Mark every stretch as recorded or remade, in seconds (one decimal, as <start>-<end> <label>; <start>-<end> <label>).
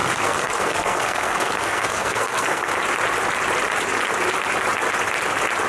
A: 0.0-2.7 remade; 2.7-5.7 recorded